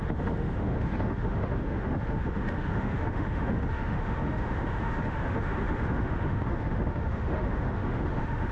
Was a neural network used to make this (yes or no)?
yes